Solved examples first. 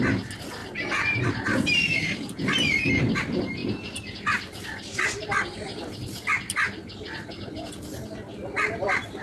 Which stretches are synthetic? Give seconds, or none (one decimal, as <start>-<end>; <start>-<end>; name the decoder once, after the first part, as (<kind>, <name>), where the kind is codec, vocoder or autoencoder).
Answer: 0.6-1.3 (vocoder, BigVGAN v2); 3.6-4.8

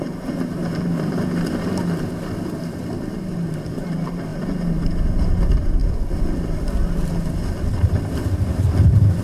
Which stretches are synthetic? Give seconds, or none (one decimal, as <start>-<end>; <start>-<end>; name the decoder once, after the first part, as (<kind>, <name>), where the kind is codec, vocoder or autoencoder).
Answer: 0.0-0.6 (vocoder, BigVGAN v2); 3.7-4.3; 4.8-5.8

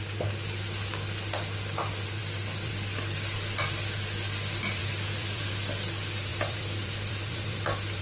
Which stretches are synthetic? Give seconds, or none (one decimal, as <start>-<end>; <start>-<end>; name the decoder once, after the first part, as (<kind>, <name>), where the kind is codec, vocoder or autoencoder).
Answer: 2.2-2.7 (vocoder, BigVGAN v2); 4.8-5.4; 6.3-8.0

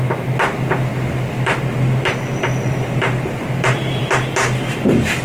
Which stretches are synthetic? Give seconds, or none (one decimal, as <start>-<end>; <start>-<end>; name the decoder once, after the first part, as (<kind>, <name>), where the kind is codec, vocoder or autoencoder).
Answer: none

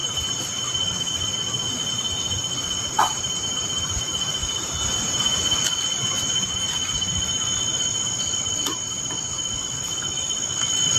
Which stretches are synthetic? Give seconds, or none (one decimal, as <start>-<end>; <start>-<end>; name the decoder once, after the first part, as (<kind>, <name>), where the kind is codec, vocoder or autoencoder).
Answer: 0.0-0.6 (vocoder, BigVGAN v2); 3.0-4.0; 4.4-5.2